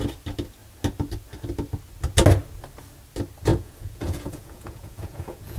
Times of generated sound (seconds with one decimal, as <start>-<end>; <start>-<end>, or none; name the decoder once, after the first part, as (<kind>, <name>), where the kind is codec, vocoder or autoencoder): 3.5-5.6 (vocoder, Vocos)